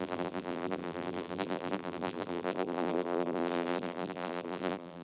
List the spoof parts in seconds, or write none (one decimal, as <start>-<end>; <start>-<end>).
0.0-5.0